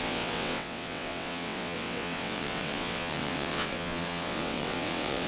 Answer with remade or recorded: remade